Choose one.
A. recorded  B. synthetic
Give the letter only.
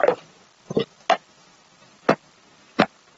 A